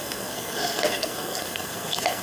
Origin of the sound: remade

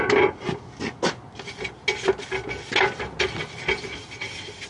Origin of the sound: recorded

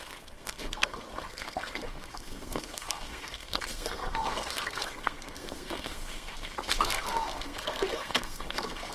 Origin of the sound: remade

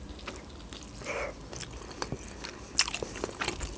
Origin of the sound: recorded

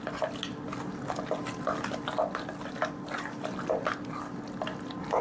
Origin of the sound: recorded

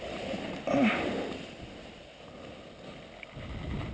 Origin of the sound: recorded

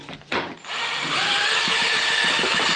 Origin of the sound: remade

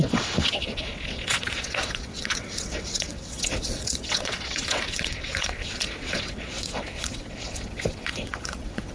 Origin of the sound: remade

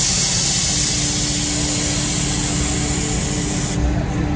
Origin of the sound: recorded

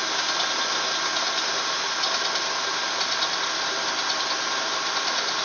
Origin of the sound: recorded